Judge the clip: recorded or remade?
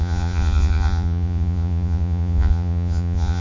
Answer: remade